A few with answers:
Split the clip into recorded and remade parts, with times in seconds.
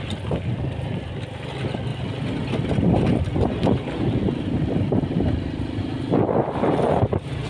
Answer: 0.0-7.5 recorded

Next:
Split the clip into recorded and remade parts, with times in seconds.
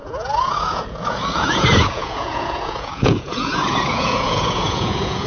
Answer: 0.0-5.3 remade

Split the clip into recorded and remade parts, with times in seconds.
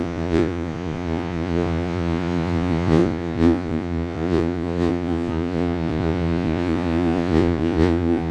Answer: 0.0-8.3 remade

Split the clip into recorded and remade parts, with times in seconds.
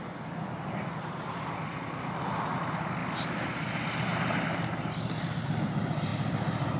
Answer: 0.0-6.8 recorded